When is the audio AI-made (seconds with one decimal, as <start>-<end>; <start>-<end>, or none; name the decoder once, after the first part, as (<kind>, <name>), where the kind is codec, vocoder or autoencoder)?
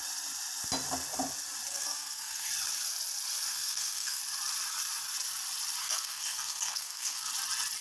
1.7-2.5 (codec, SNAC); 3.5-4.2; 5.8-7.3